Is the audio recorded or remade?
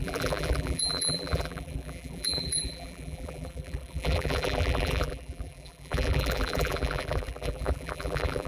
remade